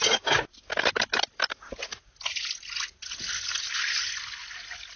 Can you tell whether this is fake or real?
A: real